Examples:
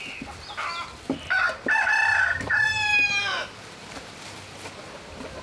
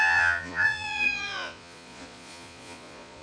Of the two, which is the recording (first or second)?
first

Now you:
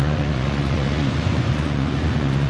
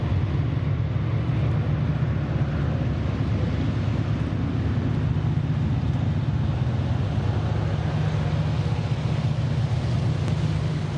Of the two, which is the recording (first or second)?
second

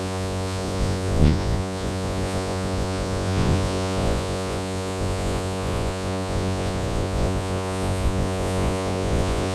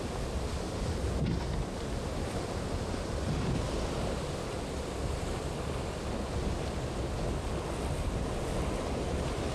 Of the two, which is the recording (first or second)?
second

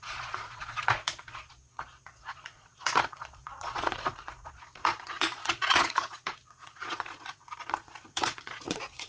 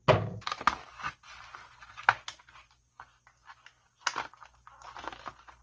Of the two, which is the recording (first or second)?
second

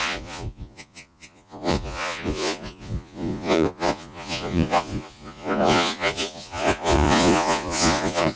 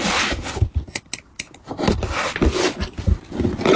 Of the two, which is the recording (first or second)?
second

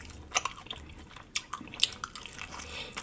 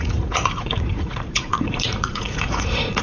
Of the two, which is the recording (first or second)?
first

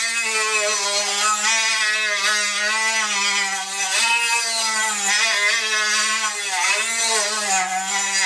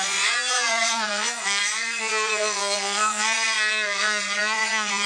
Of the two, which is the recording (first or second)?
first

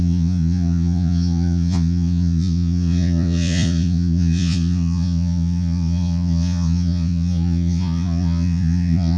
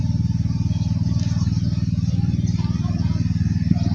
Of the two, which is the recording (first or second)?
second